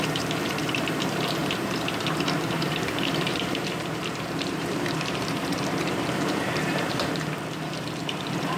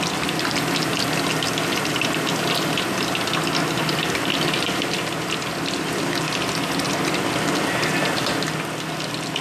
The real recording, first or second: second